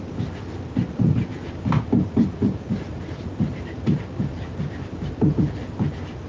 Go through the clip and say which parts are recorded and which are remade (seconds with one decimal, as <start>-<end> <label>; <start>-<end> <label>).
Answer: 0.0-1.3 recorded; 1.3-5.1 remade; 5.1-6.3 recorded